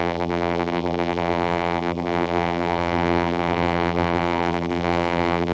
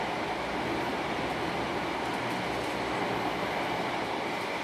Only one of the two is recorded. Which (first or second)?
second